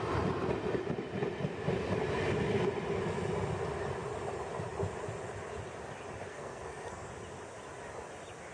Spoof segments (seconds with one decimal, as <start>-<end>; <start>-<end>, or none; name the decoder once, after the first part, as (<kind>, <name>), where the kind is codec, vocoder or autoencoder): 6.3-7.1 (codec, SNAC)